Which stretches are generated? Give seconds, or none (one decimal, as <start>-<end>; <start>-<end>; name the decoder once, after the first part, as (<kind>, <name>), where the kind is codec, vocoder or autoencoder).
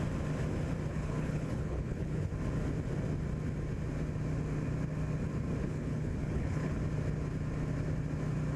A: 0.9-2.3 (codec, HILCodec); 5.6-6.8